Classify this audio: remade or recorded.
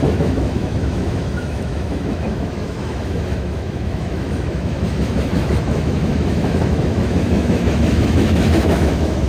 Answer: remade